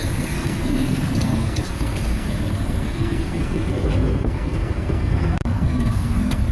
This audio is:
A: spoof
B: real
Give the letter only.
A